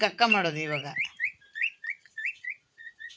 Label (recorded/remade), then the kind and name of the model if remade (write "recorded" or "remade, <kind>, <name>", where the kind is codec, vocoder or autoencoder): remade, vocoder, Vocos